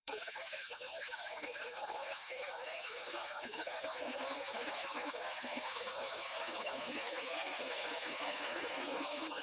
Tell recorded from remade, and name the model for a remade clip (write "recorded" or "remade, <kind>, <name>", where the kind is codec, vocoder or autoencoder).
remade, codec, SNAC